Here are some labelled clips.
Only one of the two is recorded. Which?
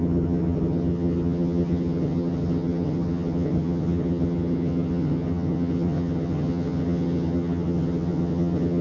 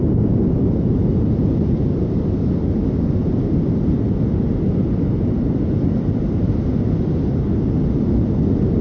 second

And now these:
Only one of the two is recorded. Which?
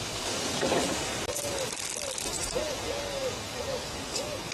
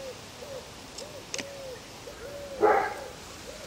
second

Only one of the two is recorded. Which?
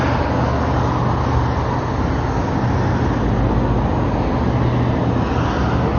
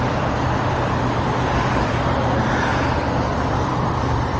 first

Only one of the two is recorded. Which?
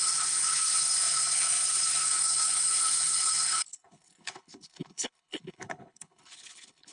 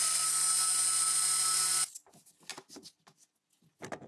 second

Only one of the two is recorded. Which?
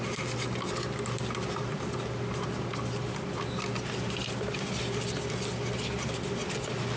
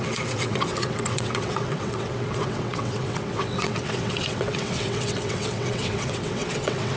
first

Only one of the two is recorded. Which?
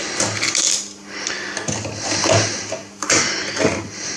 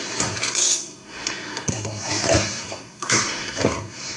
first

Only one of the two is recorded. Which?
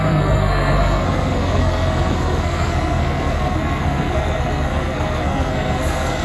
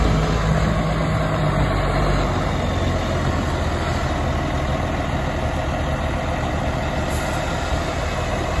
second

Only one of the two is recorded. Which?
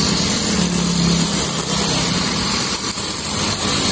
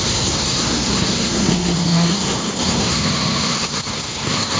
first